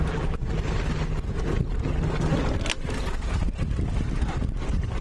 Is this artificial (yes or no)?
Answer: no